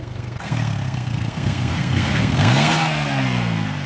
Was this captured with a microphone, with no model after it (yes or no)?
no